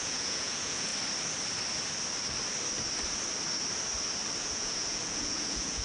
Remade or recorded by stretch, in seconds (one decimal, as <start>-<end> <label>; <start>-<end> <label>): 0.0-0.9 remade; 0.9-4.4 recorded; 4.4-5.8 remade